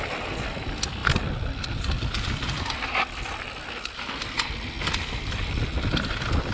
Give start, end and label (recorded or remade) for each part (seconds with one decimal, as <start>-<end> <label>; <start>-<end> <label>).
0.0-6.5 recorded